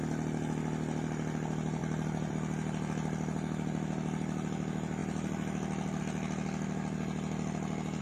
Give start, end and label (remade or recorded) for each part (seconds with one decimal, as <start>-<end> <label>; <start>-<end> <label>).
0.0-8.0 recorded